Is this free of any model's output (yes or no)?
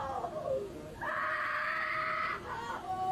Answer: yes